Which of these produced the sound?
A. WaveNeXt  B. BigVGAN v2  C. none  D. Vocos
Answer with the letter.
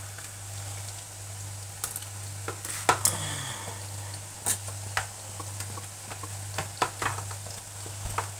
C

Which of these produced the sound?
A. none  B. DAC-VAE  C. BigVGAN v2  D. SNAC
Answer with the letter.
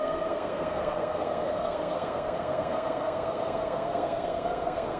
D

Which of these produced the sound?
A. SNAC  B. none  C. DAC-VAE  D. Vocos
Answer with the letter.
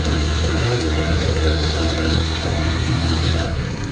A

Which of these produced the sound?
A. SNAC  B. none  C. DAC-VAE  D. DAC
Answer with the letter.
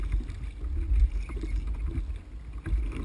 B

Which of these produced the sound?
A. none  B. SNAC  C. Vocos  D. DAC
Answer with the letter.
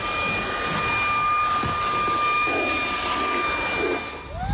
A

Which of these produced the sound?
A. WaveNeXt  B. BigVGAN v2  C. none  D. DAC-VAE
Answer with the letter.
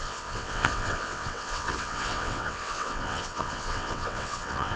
A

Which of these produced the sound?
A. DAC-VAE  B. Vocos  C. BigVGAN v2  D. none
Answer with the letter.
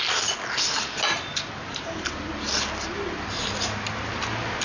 D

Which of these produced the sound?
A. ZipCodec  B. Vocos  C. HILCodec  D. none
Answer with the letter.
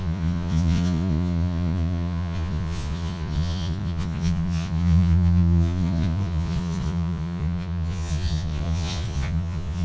B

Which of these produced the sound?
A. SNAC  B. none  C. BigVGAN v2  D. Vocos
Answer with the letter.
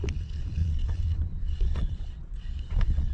D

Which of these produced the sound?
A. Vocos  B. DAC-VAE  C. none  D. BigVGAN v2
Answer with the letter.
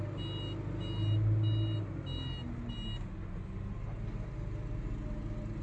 C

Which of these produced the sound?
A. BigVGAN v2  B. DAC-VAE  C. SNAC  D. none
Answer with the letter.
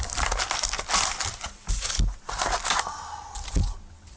D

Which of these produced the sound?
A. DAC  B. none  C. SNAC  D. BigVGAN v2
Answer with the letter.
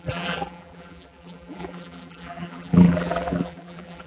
D